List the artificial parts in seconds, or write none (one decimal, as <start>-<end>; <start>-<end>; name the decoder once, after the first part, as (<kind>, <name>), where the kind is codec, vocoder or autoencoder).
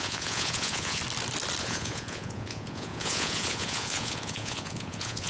0.0-1.0 (vocoder, Vocos); 1.6-5.3